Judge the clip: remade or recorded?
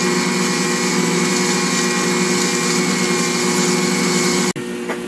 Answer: recorded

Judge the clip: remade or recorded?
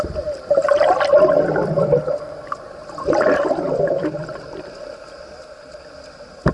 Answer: recorded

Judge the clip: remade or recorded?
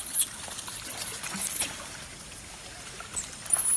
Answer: recorded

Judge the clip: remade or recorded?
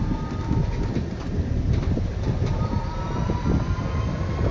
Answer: recorded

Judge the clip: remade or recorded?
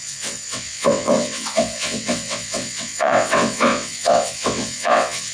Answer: remade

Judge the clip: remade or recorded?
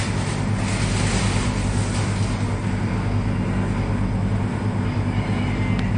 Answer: recorded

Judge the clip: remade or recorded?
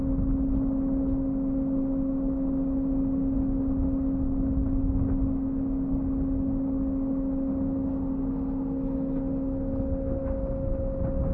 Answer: recorded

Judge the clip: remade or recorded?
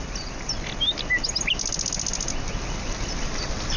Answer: recorded